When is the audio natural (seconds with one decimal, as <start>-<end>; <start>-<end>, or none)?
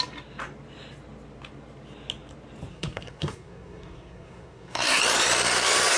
0.0-2.7; 5.0-6.0